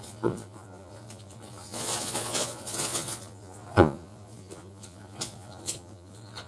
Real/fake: fake